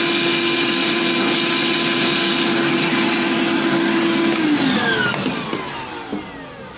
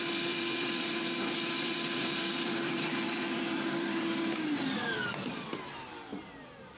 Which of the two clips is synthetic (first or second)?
second